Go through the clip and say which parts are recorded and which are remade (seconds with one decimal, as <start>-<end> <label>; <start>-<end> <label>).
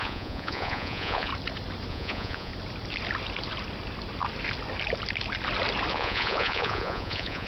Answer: 0.0-1.3 remade; 1.3-1.9 recorded; 1.9-2.5 remade; 2.5-5.9 recorded; 5.9-7.5 remade